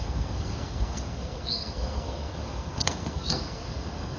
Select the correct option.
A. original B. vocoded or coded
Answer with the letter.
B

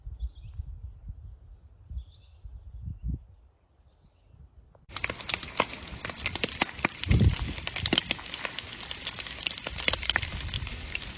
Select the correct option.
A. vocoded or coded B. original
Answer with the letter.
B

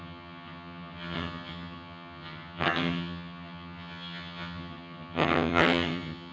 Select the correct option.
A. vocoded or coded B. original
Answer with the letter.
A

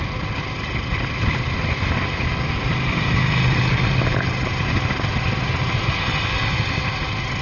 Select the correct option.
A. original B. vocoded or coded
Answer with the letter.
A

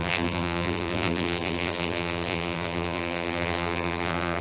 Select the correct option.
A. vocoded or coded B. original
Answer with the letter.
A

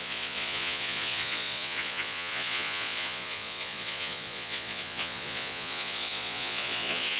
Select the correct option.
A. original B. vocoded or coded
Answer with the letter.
B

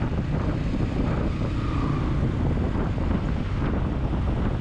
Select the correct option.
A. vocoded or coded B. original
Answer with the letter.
B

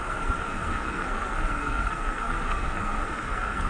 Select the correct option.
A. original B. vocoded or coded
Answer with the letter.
B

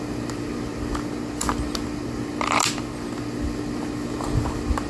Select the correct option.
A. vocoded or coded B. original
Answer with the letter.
B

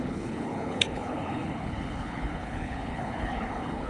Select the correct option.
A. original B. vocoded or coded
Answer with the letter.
B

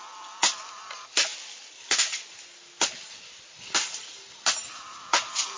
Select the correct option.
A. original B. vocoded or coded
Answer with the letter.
A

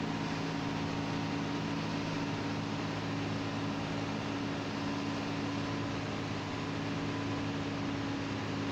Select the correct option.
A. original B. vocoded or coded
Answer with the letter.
A